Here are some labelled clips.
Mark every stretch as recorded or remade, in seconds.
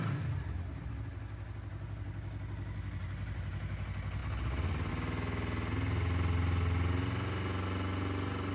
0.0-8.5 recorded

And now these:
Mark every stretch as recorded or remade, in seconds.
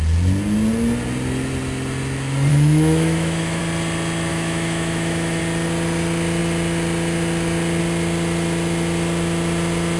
0.0-2.5 recorded; 2.5-3.6 remade; 3.6-4.3 recorded; 4.3-5.4 remade; 5.4-10.0 recorded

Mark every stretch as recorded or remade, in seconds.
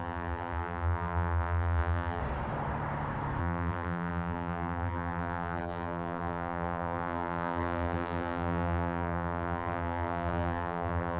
0.0-2.2 remade; 2.2-3.4 recorded; 3.4-11.2 remade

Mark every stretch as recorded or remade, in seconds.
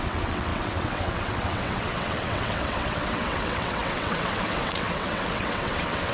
0.0-6.1 remade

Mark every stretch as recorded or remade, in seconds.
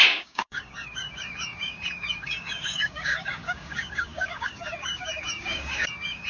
0.0-6.3 remade